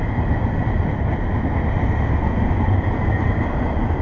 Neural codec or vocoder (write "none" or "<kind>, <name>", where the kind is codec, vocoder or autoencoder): none